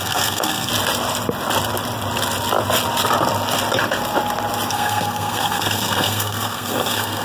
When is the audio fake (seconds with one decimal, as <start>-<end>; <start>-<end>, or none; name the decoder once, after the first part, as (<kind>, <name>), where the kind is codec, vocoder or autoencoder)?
0.0-0.7 (codec, SNAC); 4.7-7.2